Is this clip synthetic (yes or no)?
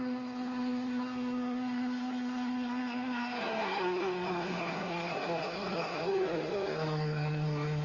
yes